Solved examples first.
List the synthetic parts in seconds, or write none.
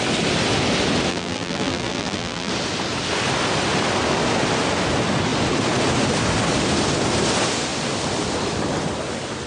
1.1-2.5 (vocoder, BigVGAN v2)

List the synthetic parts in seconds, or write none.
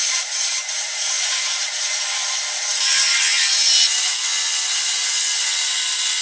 0.0-2.0 (vocoder, BigVGAN v2)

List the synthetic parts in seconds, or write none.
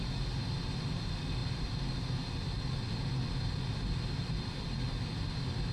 none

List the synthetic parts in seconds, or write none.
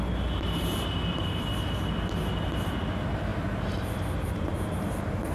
none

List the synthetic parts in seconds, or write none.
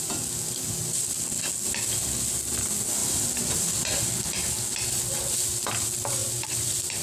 3.0-3.7 (vocoder, BigVGAN v2); 6.2-7.0